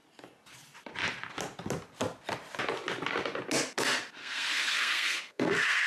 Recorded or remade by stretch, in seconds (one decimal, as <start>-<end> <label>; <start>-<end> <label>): 0.0-4.2 recorded; 4.2-5.9 remade